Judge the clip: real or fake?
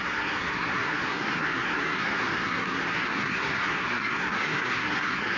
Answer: fake